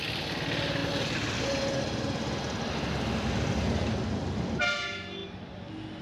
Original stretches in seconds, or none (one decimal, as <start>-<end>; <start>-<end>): 0.0-6.0